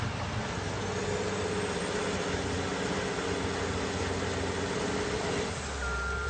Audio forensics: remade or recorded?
recorded